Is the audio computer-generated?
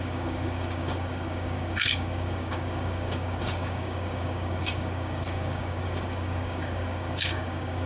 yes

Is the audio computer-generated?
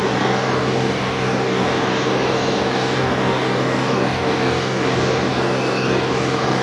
yes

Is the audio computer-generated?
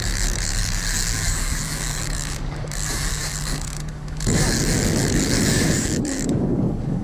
yes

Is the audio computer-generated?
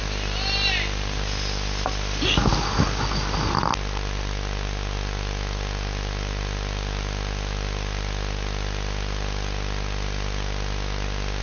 no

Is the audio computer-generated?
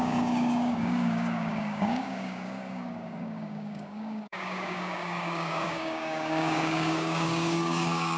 yes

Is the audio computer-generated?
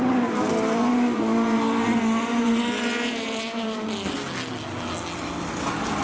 no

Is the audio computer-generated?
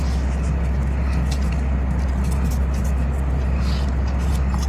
no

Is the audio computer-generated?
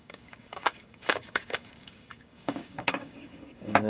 yes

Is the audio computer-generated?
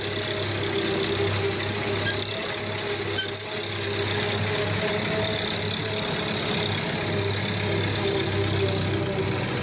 no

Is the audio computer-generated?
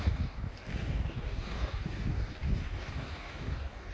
yes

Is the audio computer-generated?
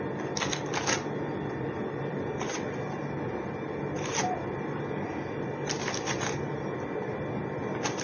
no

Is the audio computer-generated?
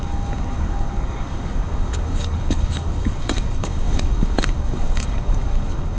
yes